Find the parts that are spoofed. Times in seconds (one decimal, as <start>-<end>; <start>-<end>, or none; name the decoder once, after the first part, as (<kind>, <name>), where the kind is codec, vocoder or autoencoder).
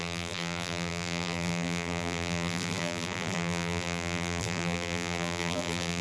0.0-6.0 (vocoder, BigVGAN v2)